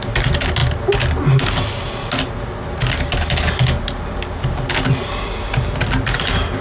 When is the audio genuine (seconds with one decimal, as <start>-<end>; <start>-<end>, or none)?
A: 0.0-6.6